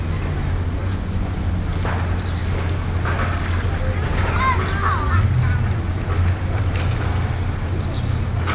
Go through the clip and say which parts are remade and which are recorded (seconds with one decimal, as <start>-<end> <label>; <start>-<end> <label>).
0.0-0.8 recorded; 0.8-1.4 remade; 1.4-8.5 recorded